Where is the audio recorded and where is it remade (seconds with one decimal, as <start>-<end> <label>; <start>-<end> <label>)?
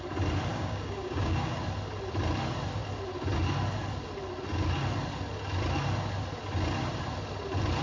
0.0-0.5 recorded; 0.5-1.6 remade; 1.6-7.8 recorded